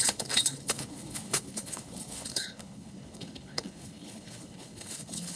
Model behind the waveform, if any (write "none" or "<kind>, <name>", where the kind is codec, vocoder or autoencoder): codec, HILCodec